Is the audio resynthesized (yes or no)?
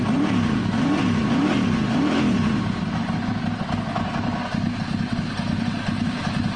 no